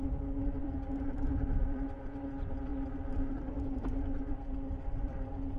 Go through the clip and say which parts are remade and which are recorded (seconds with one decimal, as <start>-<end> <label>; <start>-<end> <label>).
0.0-2.7 remade; 2.7-3.3 recorded; 3.3-5.6 remade